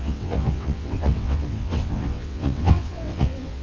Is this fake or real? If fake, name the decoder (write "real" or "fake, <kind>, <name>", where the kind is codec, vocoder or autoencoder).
fake, vocoder, WaveNeXt